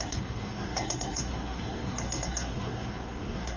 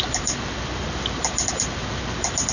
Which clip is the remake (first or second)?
first